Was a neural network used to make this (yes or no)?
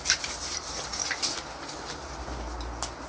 no